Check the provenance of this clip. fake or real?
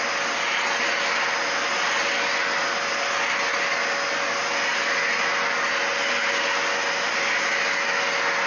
real